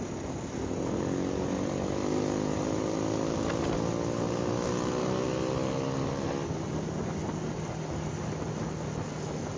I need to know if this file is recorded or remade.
recorded